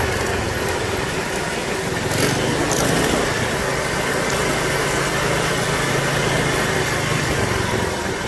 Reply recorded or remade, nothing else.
recorded